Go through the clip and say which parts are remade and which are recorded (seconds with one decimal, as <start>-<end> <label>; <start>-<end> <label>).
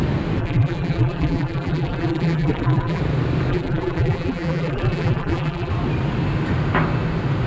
0.0-0.4 recorded; 0.4-3.0 remade; 3.0-3.5 recorded; 3.5-5.7 remade; 5.7-7.5 recorded